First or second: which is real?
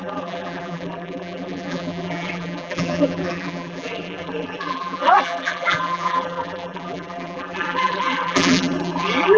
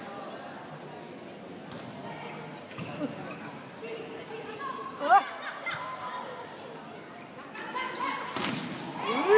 second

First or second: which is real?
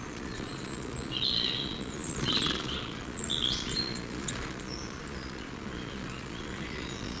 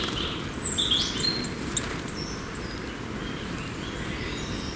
second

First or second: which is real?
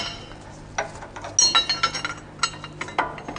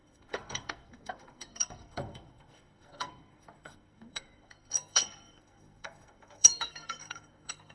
first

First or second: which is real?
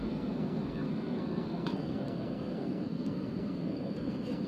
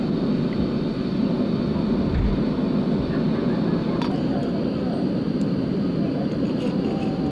second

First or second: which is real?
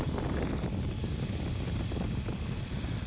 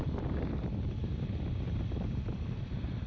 first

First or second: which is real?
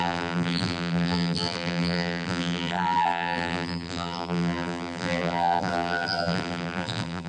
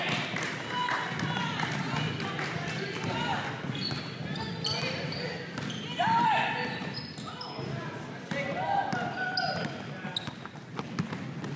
second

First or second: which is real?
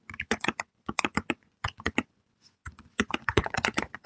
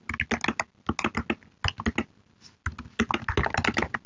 second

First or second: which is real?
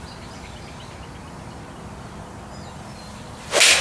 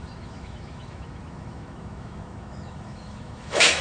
first